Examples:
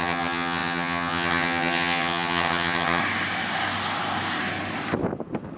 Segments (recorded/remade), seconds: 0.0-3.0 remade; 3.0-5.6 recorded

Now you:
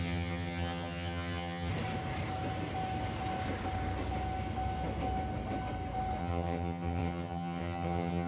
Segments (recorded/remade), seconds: 0.0-1.7 remade; 1.7-6.2 recorded; 6.2-8.3 remade

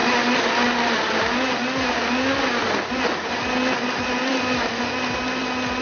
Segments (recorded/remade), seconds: 0.0-5.8 recorded

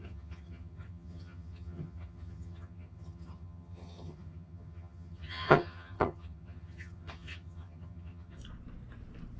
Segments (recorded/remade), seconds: 0.0-8.4 remade; 8.4-9.4 recorded